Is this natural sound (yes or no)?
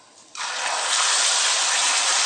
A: no